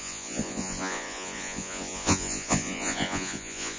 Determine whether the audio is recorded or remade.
remade